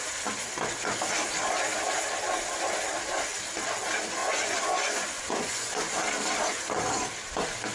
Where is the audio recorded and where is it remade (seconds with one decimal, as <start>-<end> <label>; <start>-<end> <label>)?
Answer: 0.0-4.2 recorded; 4.2-5.9 remade; 5.9-7.7 recorded